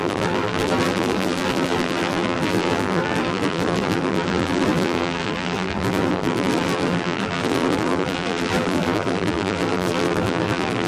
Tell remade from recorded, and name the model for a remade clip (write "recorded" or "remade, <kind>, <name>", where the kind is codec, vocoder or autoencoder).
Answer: remade, vocoder, BigVGAN v2